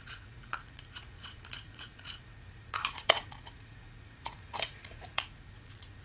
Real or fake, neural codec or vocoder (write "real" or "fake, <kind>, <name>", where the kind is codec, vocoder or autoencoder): fake, vocoder, Vocos